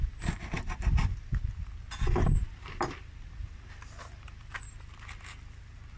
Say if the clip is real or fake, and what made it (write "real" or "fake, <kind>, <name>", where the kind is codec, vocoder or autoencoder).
real